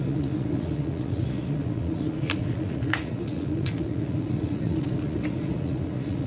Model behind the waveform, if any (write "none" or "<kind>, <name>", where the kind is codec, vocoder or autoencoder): vocoder, Vocos